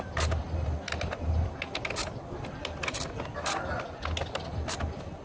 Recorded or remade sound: recorded